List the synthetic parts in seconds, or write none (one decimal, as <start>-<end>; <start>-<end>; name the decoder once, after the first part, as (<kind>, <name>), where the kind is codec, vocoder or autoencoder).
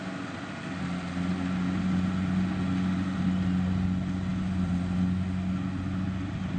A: none